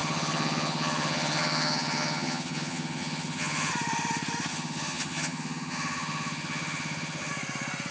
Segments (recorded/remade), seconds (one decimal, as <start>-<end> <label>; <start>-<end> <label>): 0.0-3.7 remade; 3.7-4.5 recorded; 4.5-7.3 remade; 7.3-7.9 recorded